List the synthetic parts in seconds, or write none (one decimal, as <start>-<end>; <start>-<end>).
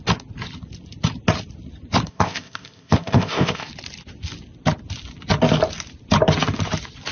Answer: 2.1-3.7